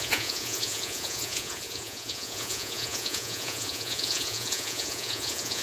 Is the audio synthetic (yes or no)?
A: yes